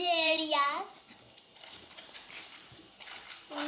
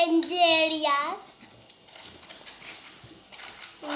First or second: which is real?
second